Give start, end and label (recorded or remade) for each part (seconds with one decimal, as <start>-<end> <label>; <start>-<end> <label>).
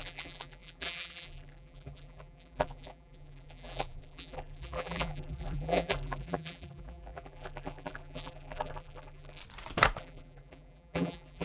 0.0-9.4 remade; 9.4-10.0 recorded; 10.0-11.4 remade